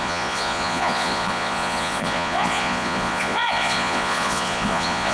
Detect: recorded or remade remade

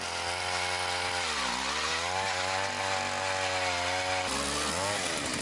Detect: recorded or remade recorded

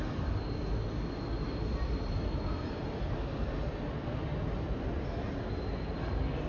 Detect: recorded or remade recorded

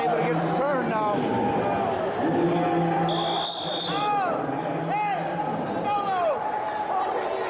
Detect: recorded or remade recorded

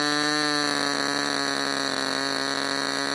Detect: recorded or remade recorded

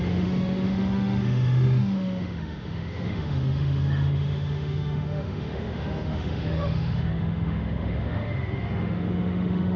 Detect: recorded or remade remade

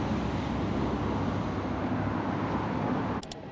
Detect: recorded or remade recorded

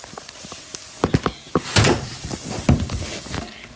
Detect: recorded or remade recorded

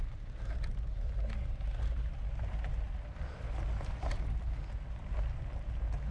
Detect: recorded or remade recorded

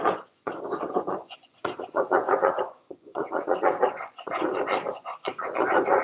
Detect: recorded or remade remade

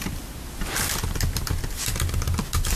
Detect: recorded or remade recorded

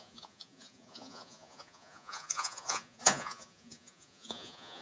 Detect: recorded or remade remade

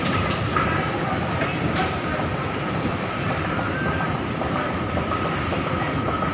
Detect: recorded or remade recorded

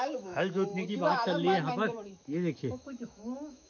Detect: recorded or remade remade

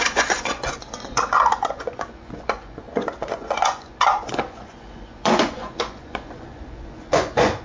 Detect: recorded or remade remade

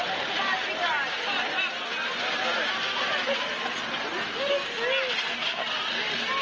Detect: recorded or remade recorded